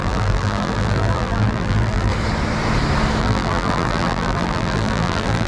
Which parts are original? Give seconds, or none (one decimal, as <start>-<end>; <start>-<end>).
2.1-3.2